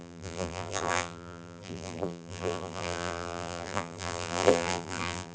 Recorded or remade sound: remade